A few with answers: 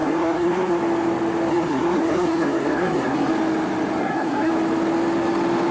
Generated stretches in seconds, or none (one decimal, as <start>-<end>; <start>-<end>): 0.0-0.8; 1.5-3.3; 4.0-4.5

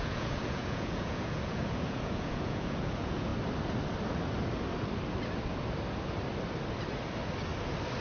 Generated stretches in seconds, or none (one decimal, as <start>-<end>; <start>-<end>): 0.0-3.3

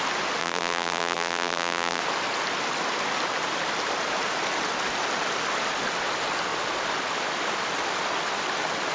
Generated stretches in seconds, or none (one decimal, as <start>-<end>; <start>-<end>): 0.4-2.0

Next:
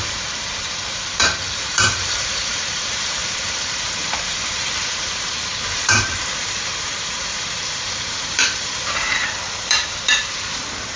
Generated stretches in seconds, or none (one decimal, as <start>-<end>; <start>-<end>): 0.0-11.0

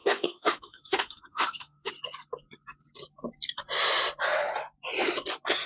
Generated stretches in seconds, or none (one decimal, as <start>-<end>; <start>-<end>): 0.0-1.9

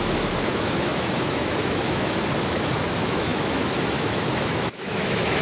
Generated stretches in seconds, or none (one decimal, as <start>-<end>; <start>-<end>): 0.0-5.4

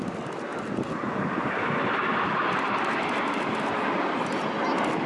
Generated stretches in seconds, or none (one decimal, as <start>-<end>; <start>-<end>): none

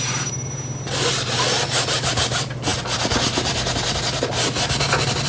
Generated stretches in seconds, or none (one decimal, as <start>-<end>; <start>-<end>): none